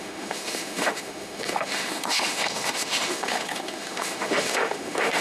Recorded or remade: remade